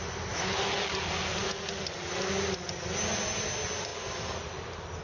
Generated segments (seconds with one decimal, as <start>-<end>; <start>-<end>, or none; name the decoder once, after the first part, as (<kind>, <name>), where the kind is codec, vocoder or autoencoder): none